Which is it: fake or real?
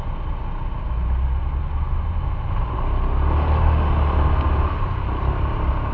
real